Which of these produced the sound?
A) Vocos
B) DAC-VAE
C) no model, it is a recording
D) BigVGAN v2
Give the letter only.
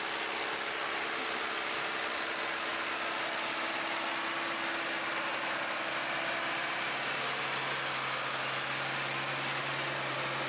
C